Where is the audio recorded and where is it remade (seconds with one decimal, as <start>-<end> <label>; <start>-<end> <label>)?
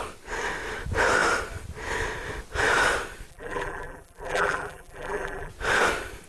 0.0-3.3 recorded; 3.3-5.5 remade; 5.5-6.3 recorded